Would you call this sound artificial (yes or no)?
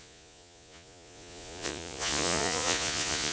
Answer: yes